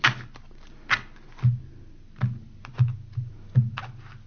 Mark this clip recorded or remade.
recorded